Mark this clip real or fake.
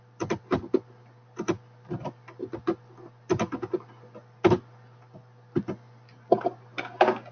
real